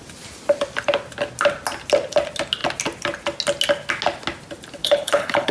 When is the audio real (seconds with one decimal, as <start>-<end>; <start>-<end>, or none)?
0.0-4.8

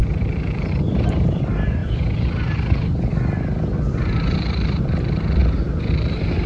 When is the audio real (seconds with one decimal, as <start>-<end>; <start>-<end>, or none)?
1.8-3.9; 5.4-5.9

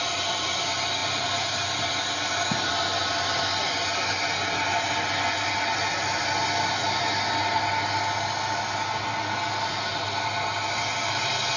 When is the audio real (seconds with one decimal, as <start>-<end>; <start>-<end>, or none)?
0.0-1.0; 1.9-11.6

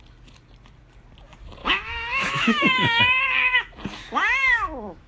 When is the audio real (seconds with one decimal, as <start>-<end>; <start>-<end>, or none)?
0.0-1.6; 3.0-4.0

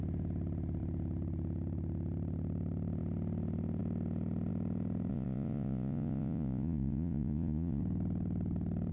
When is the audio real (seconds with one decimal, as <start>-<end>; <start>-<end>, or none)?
0.0-5.1; 7.8-8.9

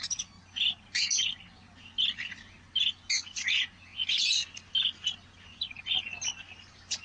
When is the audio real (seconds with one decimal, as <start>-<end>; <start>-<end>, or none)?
0.0-7.0

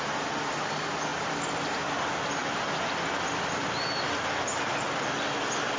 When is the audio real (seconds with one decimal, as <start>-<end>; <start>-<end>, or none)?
0.0-1.1; 1.7-5.8